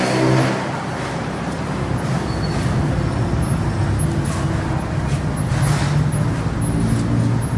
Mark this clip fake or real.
real